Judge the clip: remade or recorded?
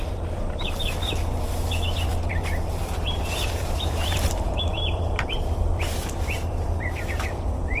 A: remade